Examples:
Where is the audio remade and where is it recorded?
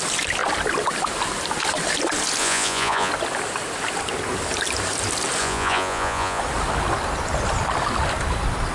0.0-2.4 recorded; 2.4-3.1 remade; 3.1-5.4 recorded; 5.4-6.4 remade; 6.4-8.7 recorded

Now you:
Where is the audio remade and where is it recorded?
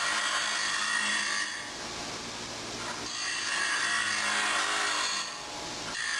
0.0-6.2 recorded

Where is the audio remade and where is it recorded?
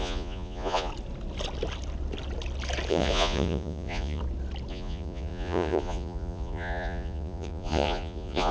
0.0-0.9 remade; 0.9-2.9 recorded; 2.9-4.2 remade; 4.2-4.7 recorded; 4.7-8.5 remade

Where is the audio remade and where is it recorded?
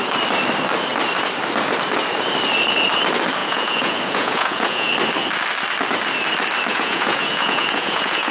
0.0-3.4 recorded; 3.4-4.9 remade; 4.9-6.7 recorded; 6.7-8.3 remade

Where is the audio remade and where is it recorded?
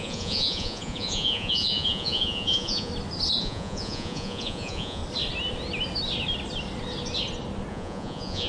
0.0-2.9 remade; 2.9-3.4 recorded; 3.4-5.0 remade; 5.0-7.7 recorded; 7.7-8.5 remade